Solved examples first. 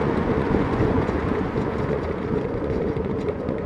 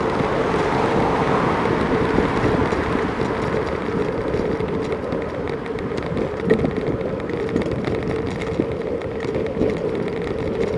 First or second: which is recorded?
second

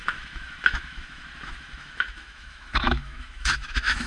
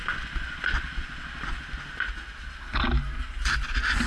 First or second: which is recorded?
second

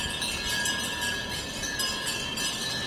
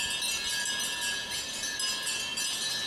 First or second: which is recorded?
second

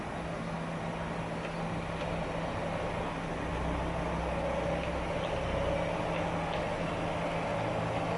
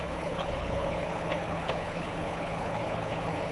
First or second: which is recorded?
first